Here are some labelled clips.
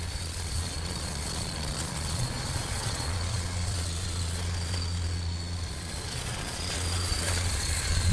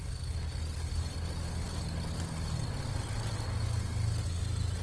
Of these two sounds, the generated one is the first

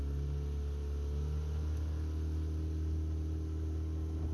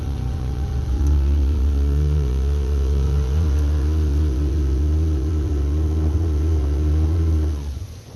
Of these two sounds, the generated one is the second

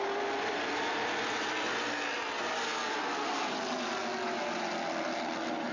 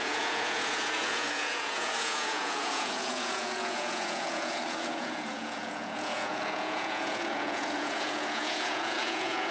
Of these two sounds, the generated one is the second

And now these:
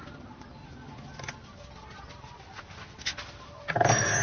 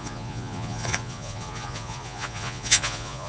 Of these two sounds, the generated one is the second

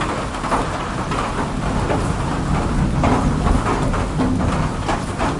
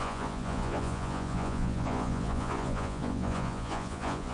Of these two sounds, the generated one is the second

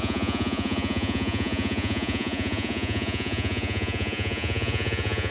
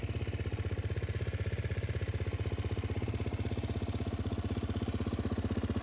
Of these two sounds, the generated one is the first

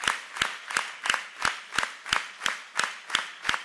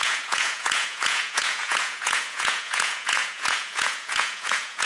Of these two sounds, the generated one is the second